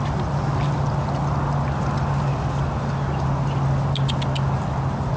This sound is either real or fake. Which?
real